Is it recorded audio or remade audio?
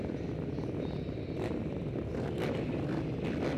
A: recorded